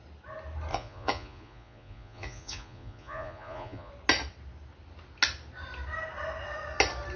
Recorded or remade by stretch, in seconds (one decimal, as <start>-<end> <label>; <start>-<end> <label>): 0.0-0.7 recorded; 0.7-3.9 remade; 3.9-7.2 recorded